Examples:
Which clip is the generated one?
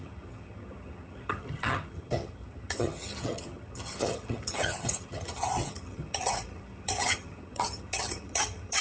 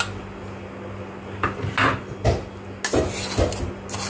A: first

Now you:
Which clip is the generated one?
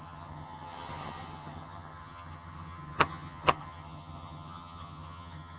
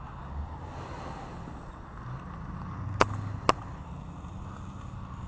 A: first